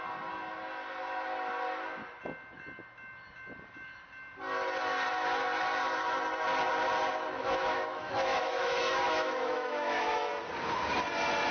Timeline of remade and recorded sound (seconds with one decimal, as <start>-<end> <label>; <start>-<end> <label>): 0.0-7.4 recorded; 7.4-10.3 remade; 10.3-11.5 recorded